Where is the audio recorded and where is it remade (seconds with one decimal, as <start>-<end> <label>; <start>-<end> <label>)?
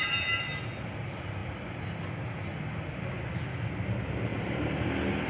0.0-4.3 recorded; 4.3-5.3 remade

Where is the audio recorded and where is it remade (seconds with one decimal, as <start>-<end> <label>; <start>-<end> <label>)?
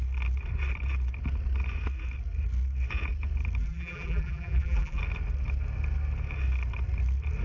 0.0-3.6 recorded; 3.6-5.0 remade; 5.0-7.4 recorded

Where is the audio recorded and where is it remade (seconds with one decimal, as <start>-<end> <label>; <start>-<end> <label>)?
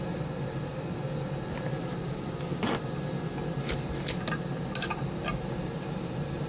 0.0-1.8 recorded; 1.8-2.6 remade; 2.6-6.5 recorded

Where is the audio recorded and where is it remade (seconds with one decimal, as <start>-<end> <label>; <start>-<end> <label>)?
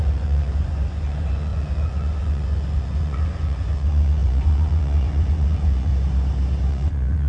0.0-5.9 remade; 5.9-6.7 recorded; 6.7-7.3 remade